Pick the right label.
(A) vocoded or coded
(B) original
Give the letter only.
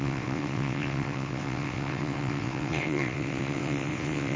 A